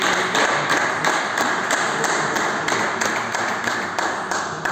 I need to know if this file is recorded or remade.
recorded